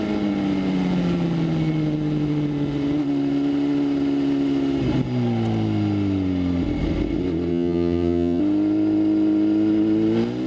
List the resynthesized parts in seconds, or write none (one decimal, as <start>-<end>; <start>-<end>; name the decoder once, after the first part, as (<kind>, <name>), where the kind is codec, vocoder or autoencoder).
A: 7.5-8.4 (vocoder, HiFi-GAN)